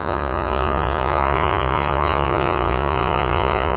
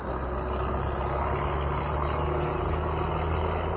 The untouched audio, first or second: second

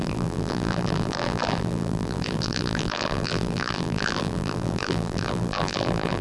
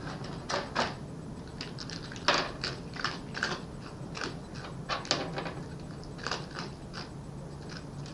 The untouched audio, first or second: second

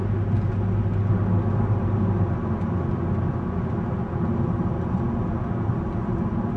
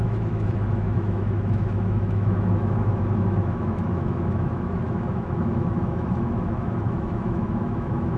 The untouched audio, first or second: first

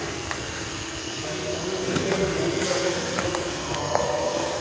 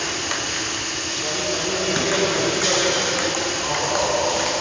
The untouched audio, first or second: second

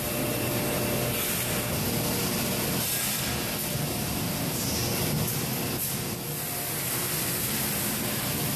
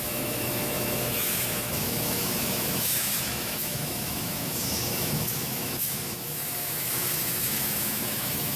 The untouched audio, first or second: first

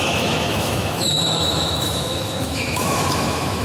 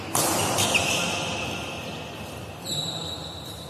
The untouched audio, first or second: second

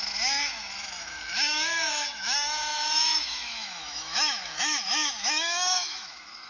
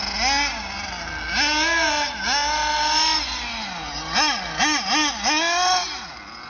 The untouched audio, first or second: second